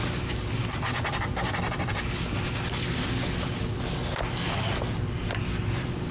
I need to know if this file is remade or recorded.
recorded